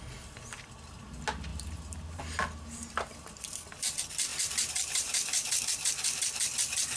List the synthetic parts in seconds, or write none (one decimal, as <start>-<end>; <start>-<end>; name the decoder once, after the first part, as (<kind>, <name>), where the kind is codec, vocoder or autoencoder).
1.5-2.2 (vocoder, BigVGAN v2); 4.3-5.6